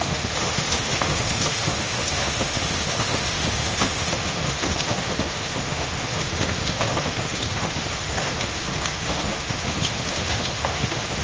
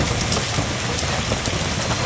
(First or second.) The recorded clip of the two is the second